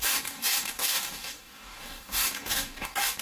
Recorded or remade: remade